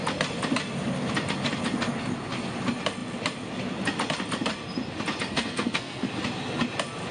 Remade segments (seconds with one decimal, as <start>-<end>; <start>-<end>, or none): 5.3-6.1